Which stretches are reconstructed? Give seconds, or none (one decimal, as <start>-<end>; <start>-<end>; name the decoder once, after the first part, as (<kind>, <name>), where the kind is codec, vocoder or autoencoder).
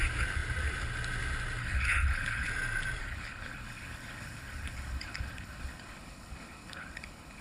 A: 1.6-2.5 (codec, HILCodec); 3.0-7.4